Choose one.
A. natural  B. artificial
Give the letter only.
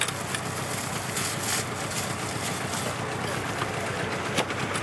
A